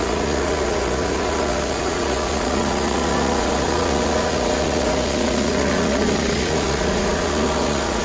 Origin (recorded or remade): remade